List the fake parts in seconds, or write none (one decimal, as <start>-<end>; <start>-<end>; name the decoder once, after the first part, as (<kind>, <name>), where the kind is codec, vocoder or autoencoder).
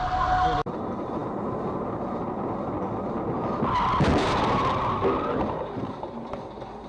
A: none